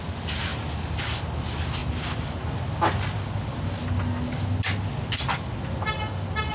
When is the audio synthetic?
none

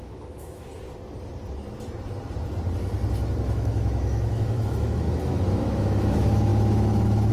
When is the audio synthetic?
0.0-0.7 (autoencoder, DAC-VAE); 3.3-7.3